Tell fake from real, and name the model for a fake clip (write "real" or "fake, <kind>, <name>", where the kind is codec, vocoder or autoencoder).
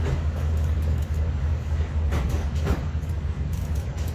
fake, codec, DAC